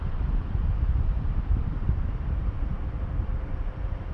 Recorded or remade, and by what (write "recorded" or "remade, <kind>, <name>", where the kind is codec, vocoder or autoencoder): remade, vocoder, BigVGAN v2